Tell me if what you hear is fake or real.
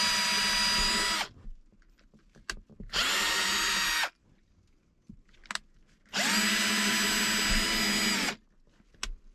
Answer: real